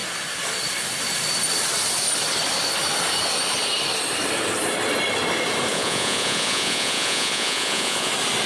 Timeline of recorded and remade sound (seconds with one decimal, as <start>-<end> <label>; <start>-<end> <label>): 0.0-5.7 recorded; 5.7-8.1 remade; 8.1-8.5 recorded